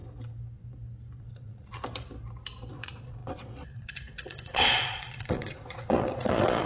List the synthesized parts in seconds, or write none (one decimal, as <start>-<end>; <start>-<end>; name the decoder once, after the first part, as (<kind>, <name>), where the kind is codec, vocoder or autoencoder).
1.2-1.7 (vocoder, Vocos); 2.7-6.7